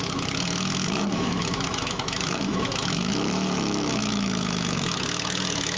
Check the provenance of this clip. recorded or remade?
remade